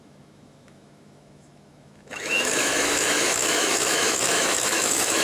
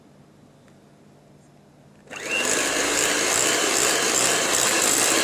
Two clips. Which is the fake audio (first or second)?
first